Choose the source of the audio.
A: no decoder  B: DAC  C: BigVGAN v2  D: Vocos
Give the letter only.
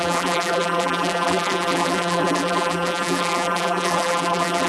C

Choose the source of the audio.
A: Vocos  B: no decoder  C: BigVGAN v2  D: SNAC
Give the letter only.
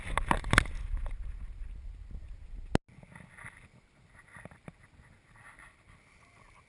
B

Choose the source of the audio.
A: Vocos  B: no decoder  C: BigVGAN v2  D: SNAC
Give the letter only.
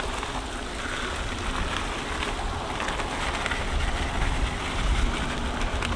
B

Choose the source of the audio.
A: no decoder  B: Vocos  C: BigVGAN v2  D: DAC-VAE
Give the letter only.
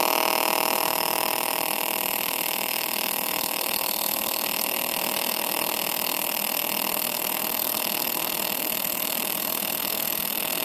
D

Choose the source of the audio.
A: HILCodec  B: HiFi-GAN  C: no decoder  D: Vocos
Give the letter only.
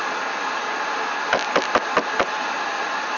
C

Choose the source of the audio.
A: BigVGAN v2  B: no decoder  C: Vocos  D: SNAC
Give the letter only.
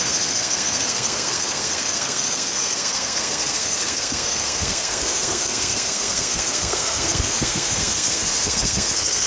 D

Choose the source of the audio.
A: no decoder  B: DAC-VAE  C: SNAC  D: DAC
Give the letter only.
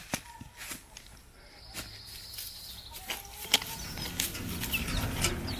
A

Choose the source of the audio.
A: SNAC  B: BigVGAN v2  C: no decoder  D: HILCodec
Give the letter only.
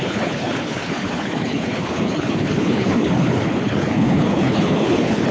D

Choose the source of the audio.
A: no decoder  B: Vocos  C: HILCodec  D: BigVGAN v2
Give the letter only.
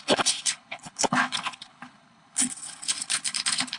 C